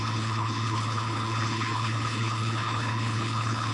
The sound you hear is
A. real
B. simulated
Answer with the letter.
B